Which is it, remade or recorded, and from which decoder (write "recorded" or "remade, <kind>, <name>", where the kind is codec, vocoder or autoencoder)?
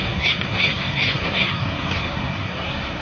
remade, codec, SNAC